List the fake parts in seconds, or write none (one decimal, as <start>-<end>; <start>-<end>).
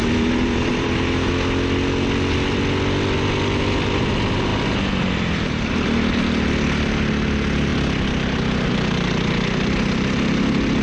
0.0-1.3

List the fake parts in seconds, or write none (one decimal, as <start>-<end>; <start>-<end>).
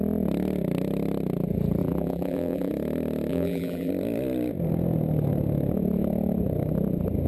1.8-2.7; 3.3-3.9